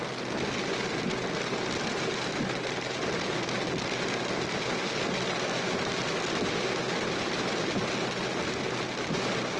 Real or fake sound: real